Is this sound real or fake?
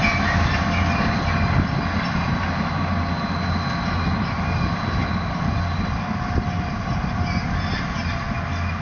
real